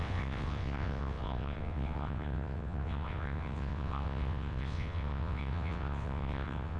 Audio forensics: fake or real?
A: fake